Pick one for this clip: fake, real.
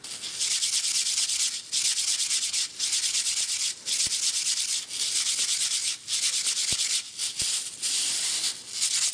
real